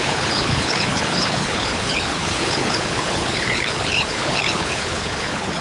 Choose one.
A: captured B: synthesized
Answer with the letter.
B